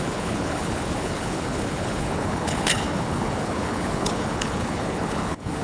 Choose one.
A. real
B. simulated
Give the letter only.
B